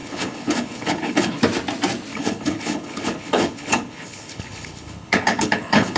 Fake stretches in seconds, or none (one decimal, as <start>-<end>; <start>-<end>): 0.0-1.4; 2.1-6.0